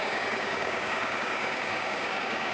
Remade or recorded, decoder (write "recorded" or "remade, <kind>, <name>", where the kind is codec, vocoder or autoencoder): remade, codec, DAC